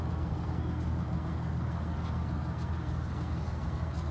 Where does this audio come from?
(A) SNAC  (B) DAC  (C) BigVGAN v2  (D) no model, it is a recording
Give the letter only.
A